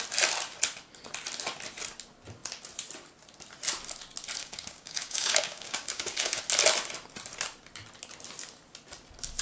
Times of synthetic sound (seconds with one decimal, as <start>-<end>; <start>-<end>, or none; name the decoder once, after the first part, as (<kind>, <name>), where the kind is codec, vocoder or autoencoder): 4.4-6.4 (codec, DAC)